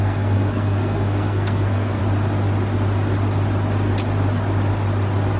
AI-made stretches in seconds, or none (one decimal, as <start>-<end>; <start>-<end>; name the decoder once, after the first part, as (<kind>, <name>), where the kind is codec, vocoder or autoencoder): 0.0-2.0 (codec, SNAC)